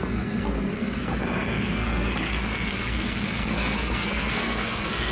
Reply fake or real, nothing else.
fake